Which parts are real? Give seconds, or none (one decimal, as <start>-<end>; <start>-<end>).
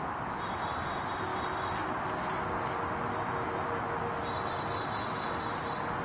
0.0-6.0